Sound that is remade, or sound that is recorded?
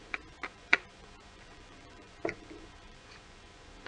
remade